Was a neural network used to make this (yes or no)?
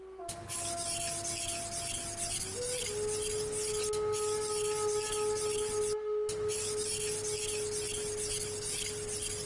no